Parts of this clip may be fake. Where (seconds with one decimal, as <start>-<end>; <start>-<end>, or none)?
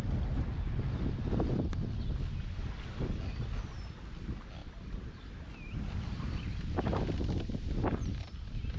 none